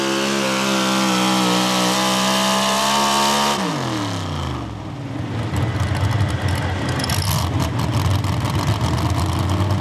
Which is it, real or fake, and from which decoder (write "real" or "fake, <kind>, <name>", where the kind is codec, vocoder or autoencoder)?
real